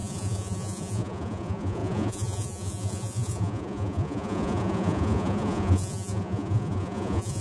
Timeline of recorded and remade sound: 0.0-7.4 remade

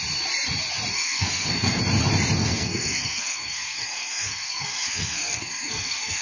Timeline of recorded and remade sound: 0.0-0.9 recorded; 0.9-1.8 remade; 1.8-2.4 recorded; 2.4-6.2 remade

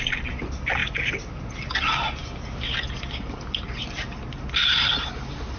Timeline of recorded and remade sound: 0.0-5.6 recorded

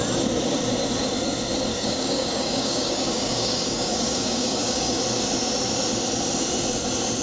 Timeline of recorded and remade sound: 0.0-1.7 recorded; 1.7-5.0 remade; 5.0-7.2 recorded

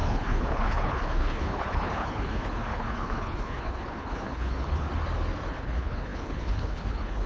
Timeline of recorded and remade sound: 0.0-4.9 remade; 4.9-5.5 recorded; 5.5-7.3 remade

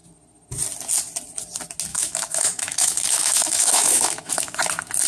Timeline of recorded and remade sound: 0.0-1.9 recorded; 1.9-4.6 remade; 4.6-5.1 recorded